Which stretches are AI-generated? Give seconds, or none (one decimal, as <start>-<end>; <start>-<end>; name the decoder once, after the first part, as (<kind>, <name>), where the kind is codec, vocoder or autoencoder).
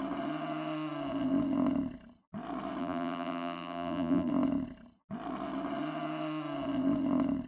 2.8-4.3 (vocoder, BigVGAN v2)